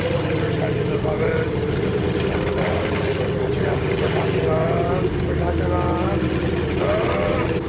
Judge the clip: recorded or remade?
recorded